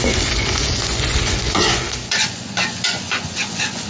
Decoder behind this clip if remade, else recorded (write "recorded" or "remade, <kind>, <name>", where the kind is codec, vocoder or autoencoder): remade, vocoder, Vocos